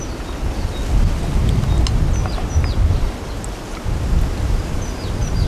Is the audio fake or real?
real